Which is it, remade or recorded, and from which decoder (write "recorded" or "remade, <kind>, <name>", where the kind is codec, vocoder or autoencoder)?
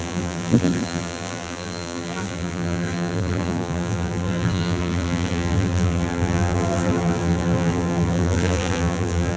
remade, vocoder, BigVGAN v2